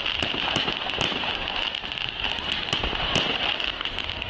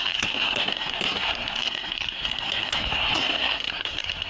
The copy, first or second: second